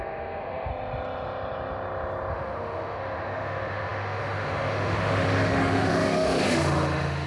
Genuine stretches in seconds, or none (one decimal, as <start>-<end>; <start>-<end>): 0.7-2.3